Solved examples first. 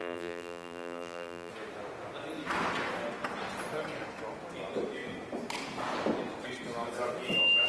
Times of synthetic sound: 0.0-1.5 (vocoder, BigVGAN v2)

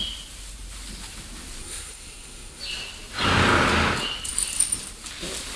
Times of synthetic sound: 1.6-2.6 (codec, SNAC)

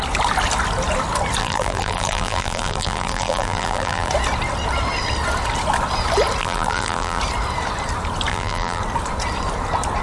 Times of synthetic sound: 1.4-4.1 (vocoder, BigVGAN v2); 6.4-7.2; 8.3-8.8